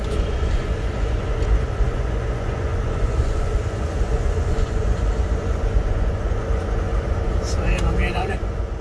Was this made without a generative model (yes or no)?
no